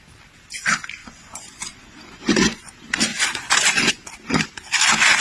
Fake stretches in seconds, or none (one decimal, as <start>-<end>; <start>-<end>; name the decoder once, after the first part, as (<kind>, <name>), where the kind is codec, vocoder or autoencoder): 1.0-2.7 (vocoder, Vocos); 3.1-4.0